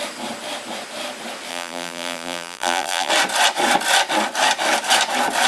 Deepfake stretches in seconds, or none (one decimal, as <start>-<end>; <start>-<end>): 1.5-3.1